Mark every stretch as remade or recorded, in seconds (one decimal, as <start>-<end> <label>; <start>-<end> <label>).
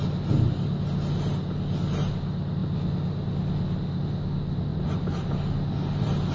0.0-4.7 recorded; 4.7-5.3 remade; 5.3-6.3 recorded